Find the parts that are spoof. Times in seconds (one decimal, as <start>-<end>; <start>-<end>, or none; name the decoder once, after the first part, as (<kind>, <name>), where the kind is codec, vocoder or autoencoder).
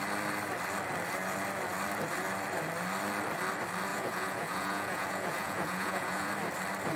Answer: 3.9-6.3 (vocoder, Vocos)